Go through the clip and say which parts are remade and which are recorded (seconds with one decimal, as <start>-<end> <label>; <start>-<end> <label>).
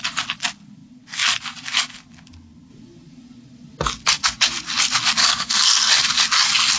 0.0-5.2 recorded; 5.2-5.9 remade; 5.9-6.8 recorded